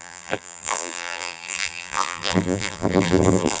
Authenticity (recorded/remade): remade